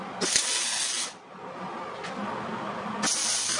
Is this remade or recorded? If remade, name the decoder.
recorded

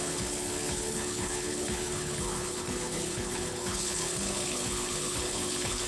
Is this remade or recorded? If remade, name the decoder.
remade, codec, HILCodec